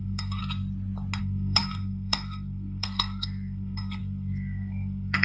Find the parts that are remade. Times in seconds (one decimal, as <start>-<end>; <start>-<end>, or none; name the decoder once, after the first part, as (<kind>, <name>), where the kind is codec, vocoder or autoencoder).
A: 0.0-0.4 (codec, SNAC); 1.2-5.2